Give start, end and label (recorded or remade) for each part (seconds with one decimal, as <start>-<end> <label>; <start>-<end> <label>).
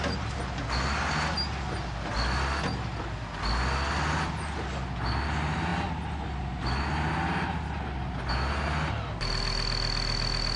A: 0.0-10.6 recorded